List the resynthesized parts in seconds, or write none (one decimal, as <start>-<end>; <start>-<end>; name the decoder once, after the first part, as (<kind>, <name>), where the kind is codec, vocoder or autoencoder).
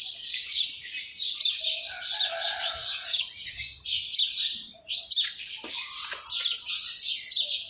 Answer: 2.8-3.6 (vocoder, Vocos); 4.5-5.0